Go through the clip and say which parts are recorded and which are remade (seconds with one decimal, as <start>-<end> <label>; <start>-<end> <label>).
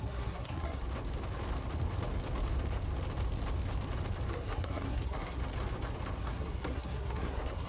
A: 0.0-0.8 remade; 0.8-4.3 recorded; 4.3-5.4 remade; 5.4-6.2 recorded; 6.2-7.7 remade